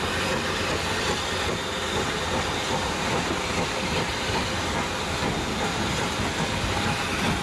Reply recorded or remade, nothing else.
recorded